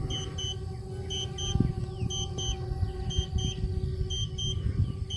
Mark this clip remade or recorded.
recorded